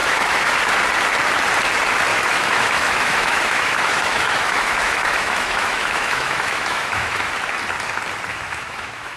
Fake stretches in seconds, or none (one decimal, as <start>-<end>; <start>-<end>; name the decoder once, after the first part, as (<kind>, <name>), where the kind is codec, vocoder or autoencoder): 0.0-0.6 (autoencoder, DAC-VAE); 2.1-7.3; 8.3-9.2